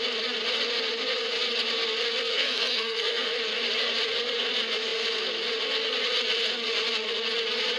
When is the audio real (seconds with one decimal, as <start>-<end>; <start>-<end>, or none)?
0.0-2.3; 3.3-7.8